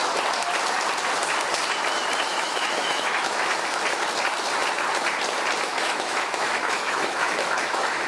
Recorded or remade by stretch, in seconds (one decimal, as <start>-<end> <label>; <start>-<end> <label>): 0.0-2.3 recorded; 2.3-3.5 remade; 3.5-5.7 recorded; 5.7-8.1 remade